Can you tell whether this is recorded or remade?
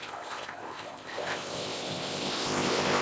remade